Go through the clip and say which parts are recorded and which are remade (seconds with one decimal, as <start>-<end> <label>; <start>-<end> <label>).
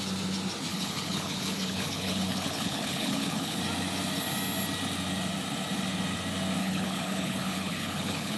0.0-0.7 recorded; 0.7-3.6 remade; 3.6-6.6 recorded; 6.6-8.4 remade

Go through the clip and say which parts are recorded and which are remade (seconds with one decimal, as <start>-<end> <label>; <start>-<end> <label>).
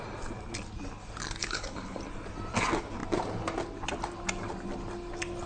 0.0-1.4 recorded; 1.4-2.0 remade; 2.0-5.5 recorded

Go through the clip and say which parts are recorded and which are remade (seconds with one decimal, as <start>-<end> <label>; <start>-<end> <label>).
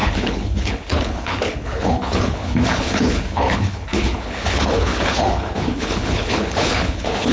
0.0-7.3 remade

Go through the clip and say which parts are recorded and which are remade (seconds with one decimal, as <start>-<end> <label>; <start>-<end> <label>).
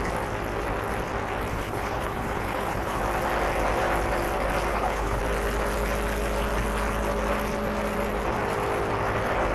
0.0-1.5 recorded; 1.5-3.0 remade; 3.0-4.7 recorded; 4.7-5.2 remade; 5.2-9.5 recorded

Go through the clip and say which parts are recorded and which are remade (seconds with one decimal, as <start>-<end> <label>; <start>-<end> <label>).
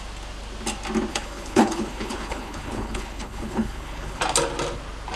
0.0-1.1 recorded; 1.1-4.2 remade; 4.2-5.2 recorded